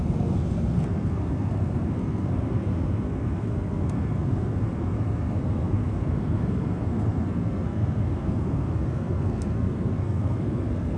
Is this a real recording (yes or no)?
no